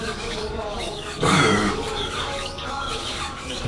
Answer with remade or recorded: remade